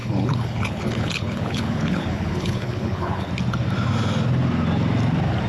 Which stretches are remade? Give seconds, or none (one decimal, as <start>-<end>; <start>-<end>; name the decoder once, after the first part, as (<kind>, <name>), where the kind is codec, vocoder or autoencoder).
0.0-3.3 (codec, HILCodec)